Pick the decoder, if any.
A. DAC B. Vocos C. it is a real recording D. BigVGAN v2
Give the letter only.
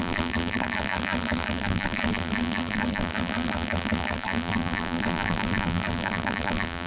D